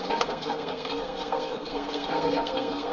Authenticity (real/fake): fake